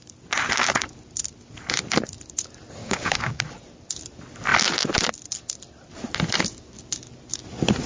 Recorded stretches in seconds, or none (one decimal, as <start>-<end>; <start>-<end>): 0.0-2.8; 3.4-7.9